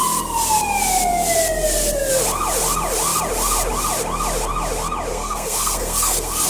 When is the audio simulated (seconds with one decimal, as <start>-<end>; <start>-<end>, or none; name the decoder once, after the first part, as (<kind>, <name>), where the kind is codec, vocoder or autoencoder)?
5.1-6.5 (codec, SNAC)